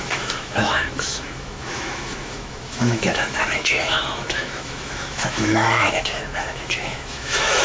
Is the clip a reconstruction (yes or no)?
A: yes